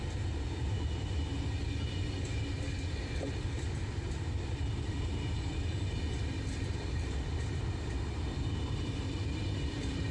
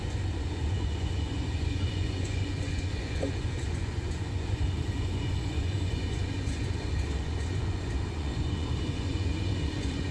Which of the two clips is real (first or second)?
first